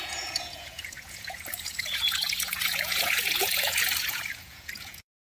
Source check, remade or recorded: remade